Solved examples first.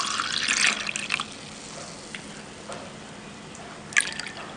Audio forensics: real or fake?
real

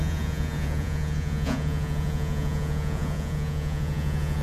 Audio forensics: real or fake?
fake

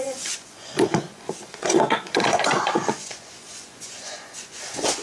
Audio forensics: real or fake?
fake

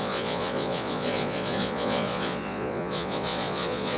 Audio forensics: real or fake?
fake